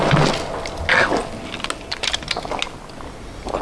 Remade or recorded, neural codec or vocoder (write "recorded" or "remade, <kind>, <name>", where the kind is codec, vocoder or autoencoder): recorded